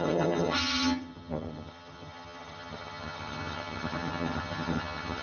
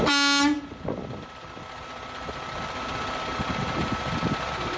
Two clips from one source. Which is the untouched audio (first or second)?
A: second